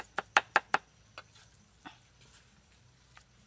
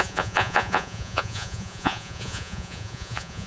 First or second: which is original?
first